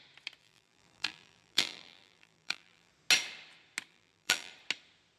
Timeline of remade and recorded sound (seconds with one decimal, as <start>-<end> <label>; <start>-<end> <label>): 0.0-0.4 recorded; 0.4-2.9 remade; 2.9-3.9 recorded; 3.9-4.5 remade; 4.5-5.2 recorded